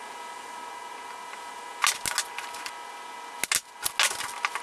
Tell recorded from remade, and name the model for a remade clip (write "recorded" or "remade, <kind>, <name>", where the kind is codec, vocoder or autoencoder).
recorded